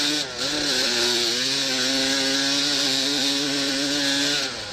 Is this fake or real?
real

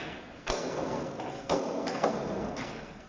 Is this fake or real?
fake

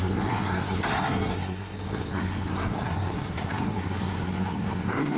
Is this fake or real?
fake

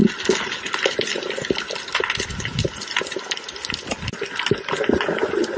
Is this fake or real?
real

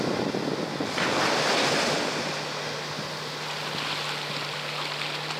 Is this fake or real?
real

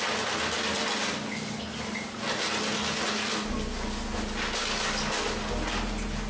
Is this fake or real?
real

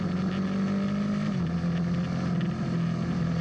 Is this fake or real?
real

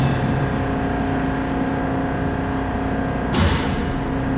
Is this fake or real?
real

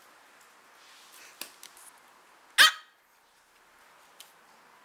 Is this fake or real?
real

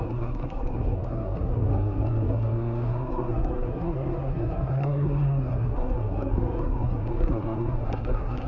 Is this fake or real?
fake